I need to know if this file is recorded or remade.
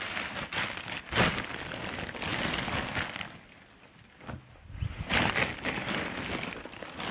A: recorded